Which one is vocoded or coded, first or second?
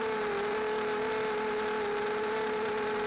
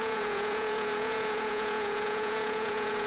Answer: second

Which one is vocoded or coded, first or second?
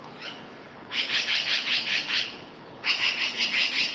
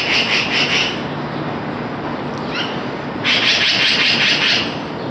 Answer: first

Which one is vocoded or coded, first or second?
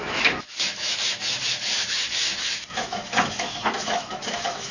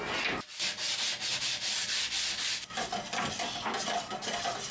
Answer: first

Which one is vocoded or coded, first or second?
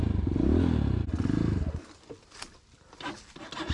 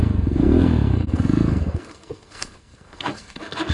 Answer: second